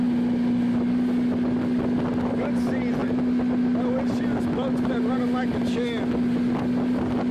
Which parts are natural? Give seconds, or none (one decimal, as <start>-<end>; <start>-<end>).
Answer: 0.0-7.3